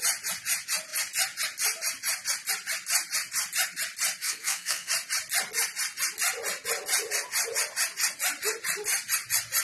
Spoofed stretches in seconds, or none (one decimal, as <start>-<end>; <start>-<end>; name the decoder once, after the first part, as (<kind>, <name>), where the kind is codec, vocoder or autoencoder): 4.2-4.9 (codec, SNAC)